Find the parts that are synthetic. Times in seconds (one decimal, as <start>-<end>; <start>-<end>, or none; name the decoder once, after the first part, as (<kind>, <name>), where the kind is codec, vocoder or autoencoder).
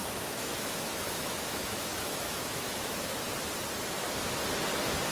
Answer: 0.0-3.1 (autoencoder, DAC-VAE)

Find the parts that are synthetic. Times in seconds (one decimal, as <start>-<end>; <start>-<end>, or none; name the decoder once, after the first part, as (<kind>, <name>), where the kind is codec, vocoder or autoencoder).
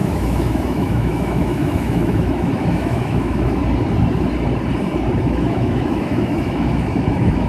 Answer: 0.0-3.6 (autoencoder, DAC-VAE); 5.2-7.5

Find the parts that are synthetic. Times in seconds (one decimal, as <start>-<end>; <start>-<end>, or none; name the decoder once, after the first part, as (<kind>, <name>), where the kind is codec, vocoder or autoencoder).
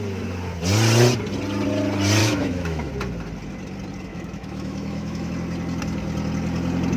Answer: 2.2-2.9 (autoencoder, DAC-VAE); 4.1-5.3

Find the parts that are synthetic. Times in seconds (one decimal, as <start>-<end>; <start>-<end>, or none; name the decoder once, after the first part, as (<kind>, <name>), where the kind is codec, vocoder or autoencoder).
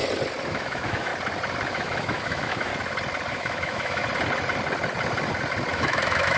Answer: 0.5-1.1 (autoencoder, DAC-VAE); 1.7-2.7; 3.3-4.0; 5.7-6.4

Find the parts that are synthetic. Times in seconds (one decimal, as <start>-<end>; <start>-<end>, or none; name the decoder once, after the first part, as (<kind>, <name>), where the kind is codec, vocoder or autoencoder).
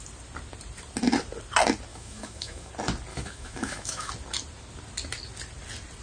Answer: 1.9-2.7 (autoencoder, DAC-VAE); 3.1-4.1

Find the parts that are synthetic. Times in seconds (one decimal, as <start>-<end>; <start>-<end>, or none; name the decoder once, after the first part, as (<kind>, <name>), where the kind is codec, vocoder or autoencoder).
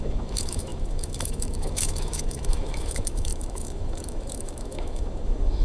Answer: 0.0-5.6 (autoencoder, DAC-VAE)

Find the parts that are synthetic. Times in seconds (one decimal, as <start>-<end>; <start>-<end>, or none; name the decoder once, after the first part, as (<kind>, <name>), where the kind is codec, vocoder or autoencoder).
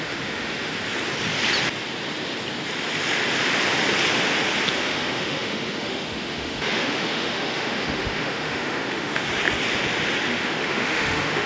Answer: 0.0-0.7 (autoencoder, DAC-VAE); 4.7-9.3; 10.3-11.5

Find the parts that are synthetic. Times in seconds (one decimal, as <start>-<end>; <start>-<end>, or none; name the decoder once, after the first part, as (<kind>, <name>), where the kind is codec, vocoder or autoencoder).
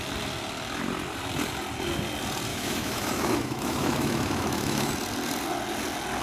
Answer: 2.5-4.9 (autoencoder, DAC-VAE)